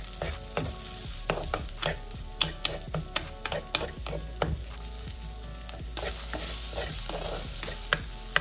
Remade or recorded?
recorded